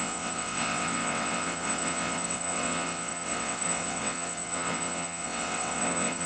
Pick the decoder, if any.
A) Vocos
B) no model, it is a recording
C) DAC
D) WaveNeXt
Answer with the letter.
D